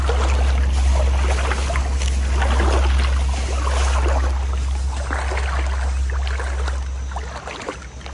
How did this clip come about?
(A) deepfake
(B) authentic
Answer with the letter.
B